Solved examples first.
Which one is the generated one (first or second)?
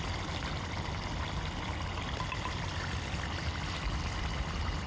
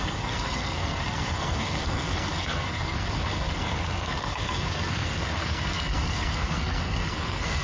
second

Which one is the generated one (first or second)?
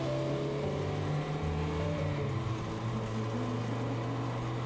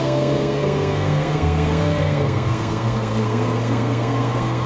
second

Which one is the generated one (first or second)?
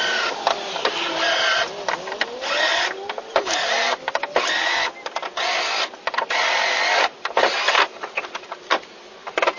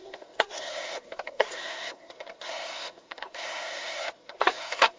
second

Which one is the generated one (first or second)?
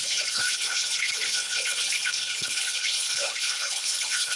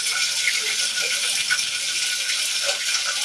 first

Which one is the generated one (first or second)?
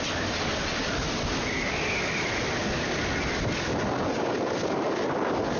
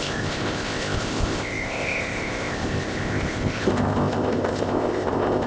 second